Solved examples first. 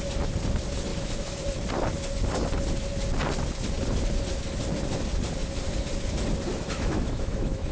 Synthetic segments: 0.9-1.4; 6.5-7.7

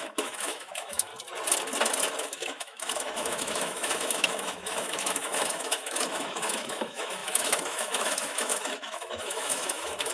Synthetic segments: 0.0-1.1; 2.2-10.1

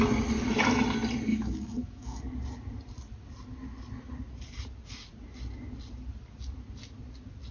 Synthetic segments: 1.3-2.2

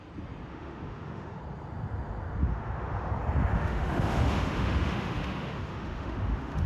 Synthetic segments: 0.5-1.4; 2.4-3.1; 3.5-6.7

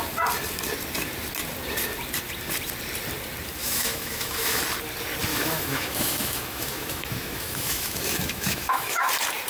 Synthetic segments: 3.6-4.6; 5.3-9.1

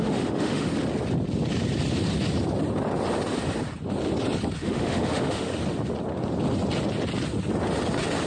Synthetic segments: 0.0-0.7; 4.6-5.5

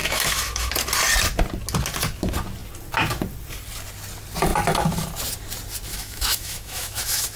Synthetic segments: 0.0-0.7; 5.9-7.4

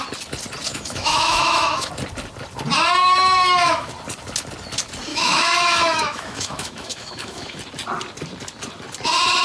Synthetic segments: 0.7-1.9; 3.0-3.9; 5.1-7.6